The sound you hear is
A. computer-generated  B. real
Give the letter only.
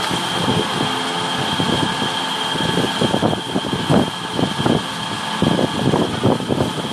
B